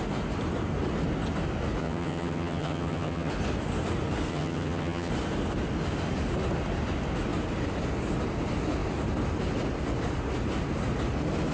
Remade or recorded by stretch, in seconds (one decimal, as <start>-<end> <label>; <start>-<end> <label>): 0.0-1.8 recorded; 1.8-3.3 remade; 3.3-4.3 recorded; 4.3-5.1 remade; 5.1-11.5 recorded